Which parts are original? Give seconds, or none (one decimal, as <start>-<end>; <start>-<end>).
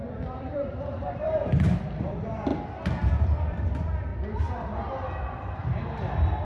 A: 2.5-3.5; 4.1-6.4